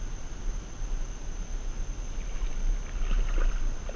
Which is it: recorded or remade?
recorded